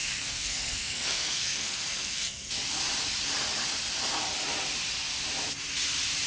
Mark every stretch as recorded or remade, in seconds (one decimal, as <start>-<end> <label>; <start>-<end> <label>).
0.0-2.5 remade; 2.5-6.3 recorded